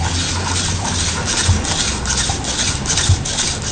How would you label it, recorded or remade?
recorded